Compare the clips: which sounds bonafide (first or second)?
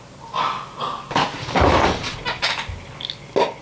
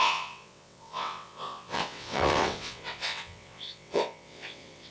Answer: first